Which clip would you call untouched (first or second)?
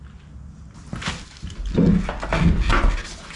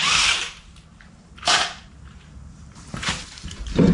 first